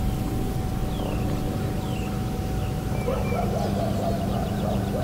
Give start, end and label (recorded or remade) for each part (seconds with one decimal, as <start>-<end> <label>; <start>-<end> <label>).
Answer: 0.0-0.8 remade; 0.8-3.8 recorded; 3.8-5.0 remade